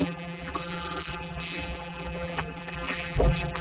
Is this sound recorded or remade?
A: remade